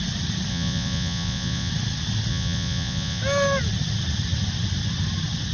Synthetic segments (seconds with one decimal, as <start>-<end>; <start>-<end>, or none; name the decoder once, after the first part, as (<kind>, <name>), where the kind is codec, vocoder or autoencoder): 0.5-1.7 (vocoder, Vocos); 2.3-3.2